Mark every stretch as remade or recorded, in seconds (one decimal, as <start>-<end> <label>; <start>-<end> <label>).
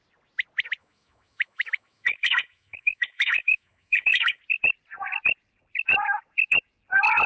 0.0-0.8 recorded; 0.8-4.4 remade; 4.4-7.3 recorded